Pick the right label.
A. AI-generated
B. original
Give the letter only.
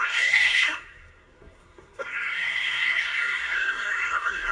A